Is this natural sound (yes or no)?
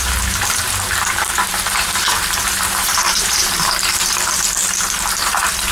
no